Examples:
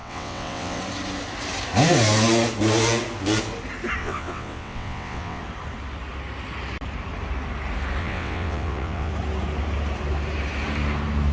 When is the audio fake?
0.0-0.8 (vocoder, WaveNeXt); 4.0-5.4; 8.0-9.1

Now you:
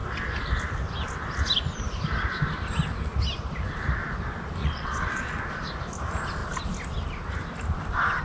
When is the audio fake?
4.6-5.3 (vocoder, WaveNeXt)

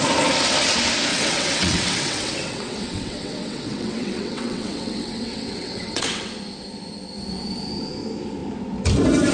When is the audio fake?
1.1-6.3 (vocoder, WaveNeXt)

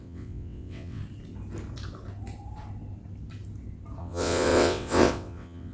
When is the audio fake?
0.0-1.0 (vocoder, WaveNeXt); 4.0-5.7

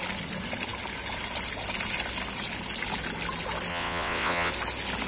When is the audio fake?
3.7-4.5 (vocoder, WaveNeXt)

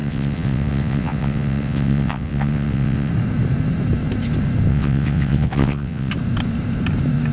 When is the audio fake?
0.0-3.1 (vocoder, WaveNeXt); 4.7-6.1

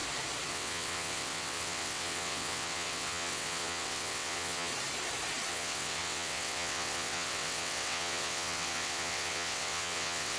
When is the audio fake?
0.5-4.7 (vocoder, WaveNeXt); 5.5-10.4

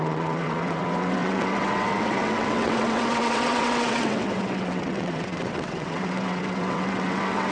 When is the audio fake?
0.0-7.5 (vocoder, WaveNeXt)